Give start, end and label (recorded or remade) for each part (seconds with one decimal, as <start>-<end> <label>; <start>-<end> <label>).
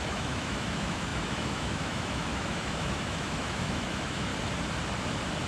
0.0-4.3 remade; 4.3-5.5 recorded